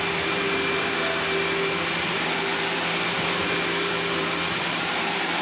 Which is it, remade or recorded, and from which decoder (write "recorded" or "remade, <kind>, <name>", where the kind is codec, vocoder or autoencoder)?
remade, vocoder, BigVGAN v2